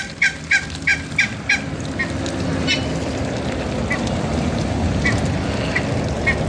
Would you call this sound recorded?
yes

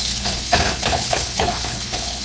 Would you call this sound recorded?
no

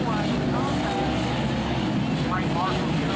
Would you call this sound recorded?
yes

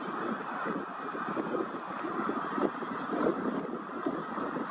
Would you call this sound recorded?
yes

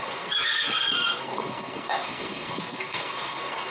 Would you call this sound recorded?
no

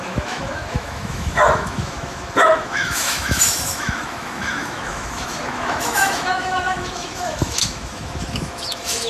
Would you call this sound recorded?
no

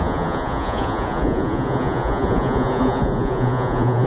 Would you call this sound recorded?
no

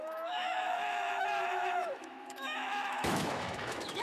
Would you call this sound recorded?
no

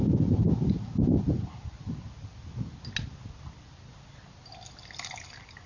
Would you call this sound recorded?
yes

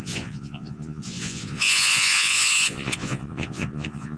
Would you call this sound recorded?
no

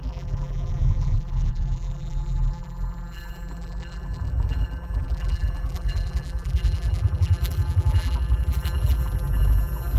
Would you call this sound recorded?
no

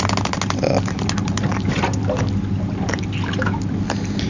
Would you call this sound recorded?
yes